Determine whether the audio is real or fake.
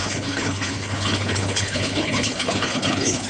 fake